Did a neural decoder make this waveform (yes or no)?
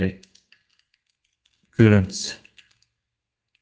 yes